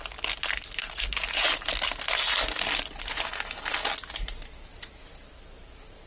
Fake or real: real